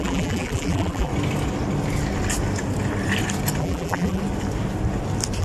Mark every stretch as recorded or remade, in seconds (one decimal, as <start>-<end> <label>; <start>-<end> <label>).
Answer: 0.0-1.1 remade; 1.1-3.6 recorded; 3.6-4.2 remade; 4.2-5.4 recorded